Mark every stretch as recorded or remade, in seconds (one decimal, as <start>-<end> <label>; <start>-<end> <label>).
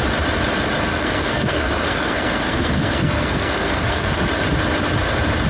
0.0-0.9 recorded; 0.9-4.2 remade; 4.2-5.5 recorded